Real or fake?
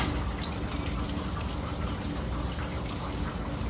real